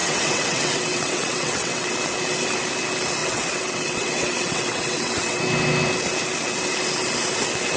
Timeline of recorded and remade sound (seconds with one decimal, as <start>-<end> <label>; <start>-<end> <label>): 0.0-1.9 remade; 1.9-3.2 recorded; 3.2-5.4 remade; 5.4-7.8 recorded